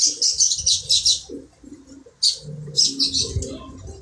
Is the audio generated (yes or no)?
no